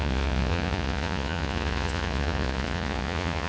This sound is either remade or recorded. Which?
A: remade